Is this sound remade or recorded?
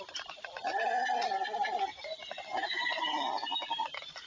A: recorded